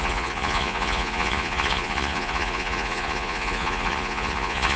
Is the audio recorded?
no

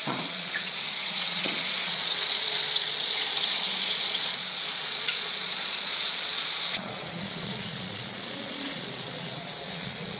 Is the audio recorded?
no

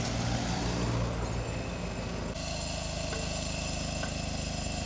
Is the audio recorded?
yes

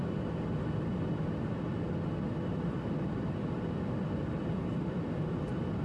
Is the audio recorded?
yes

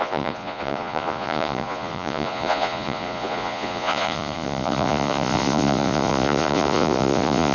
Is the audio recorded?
no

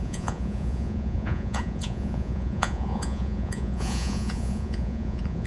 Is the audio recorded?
no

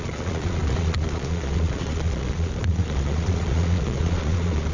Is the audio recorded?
no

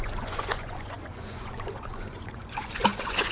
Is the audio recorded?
no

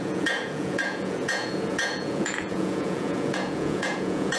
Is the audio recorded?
no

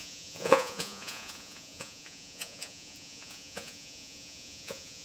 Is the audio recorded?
no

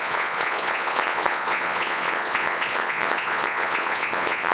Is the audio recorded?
no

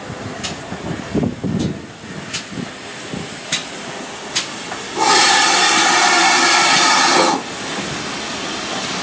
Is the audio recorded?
yes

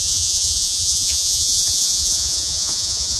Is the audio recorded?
no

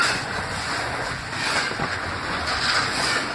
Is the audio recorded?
no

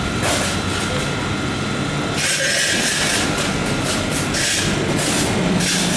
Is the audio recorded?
yes